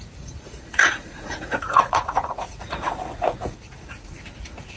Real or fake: fake